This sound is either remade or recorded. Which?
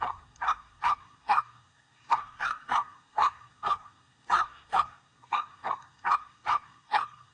remade